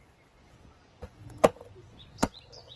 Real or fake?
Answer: fake